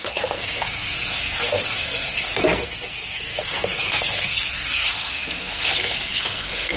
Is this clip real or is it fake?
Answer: fake